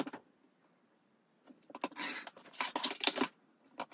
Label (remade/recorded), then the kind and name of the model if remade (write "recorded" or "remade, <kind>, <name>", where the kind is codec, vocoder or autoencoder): recorded